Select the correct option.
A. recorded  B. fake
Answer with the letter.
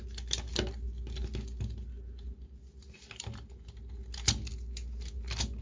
A